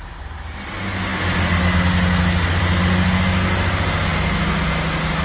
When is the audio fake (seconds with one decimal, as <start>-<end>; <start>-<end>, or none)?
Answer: none